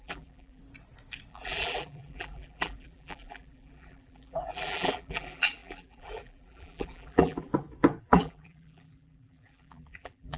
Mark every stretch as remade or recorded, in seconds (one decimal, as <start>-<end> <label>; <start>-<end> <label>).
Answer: 0.0-0.6 remade; 0.6-1.3 recorded; 1.3-7.5 remade; 7.5-8.0 recorded; 8.0-10.4 remade